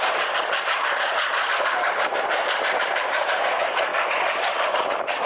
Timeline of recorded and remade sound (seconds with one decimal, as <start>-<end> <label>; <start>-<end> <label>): 0.0-3.9 remade; 3.9-5.3 recorded